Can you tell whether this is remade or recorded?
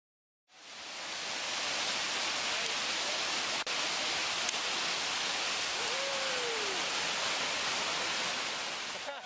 recorded